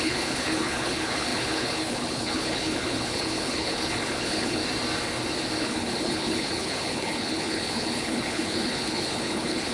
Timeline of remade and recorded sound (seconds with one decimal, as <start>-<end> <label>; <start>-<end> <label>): 0.0-4.6 remade; 4.6-5.6 recorded; 5.6-9.7 remade